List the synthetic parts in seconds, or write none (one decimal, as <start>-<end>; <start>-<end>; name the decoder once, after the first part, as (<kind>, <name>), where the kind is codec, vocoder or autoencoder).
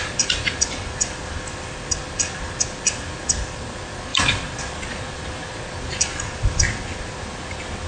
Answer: 4.1-4.6 (vocoder, BigVGAN v2)